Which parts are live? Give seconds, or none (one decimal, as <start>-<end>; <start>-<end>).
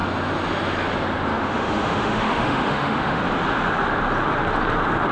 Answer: 0.0-1.3; 3.2-5.1